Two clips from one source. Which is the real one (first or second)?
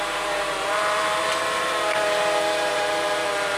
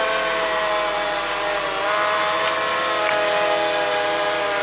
second